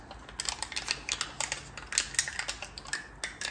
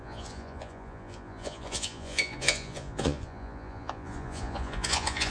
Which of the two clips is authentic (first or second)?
first